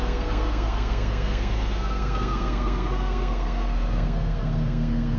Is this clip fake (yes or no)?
yes